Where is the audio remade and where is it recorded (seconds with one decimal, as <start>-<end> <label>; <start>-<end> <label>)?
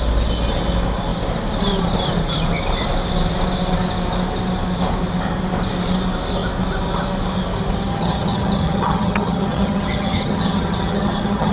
0.0-7.9 recorded; 7.9-11.5 remade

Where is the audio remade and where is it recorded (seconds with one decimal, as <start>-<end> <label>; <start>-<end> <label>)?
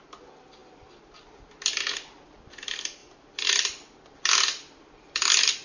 0.0-5.6 recorded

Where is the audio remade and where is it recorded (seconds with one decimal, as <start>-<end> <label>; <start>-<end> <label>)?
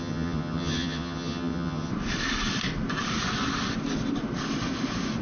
0.0-1.9 remade; 1.9-5.2 recorded